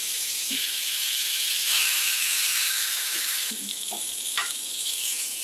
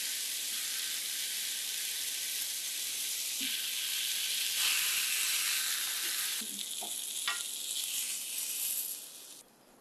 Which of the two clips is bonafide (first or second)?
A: second